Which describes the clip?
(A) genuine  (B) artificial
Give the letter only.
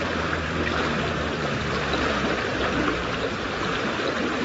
B